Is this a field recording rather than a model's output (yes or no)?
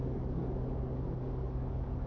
no